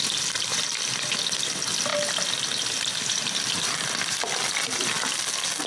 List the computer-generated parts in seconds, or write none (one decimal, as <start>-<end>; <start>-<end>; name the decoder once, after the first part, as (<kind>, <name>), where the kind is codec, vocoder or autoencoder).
none